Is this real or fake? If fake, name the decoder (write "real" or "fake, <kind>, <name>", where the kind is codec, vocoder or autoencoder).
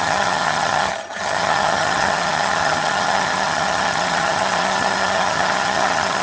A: fake, vocoder, HiFi-GAN